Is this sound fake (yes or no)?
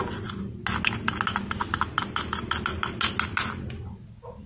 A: no